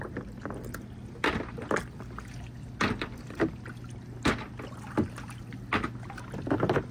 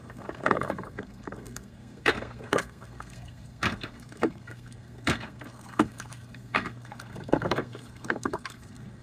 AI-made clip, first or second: second